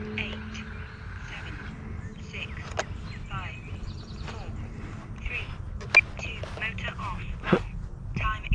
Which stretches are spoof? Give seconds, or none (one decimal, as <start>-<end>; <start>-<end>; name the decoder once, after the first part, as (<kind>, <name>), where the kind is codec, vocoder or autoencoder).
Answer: none